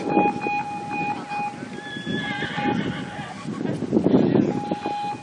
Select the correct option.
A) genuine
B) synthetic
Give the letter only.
A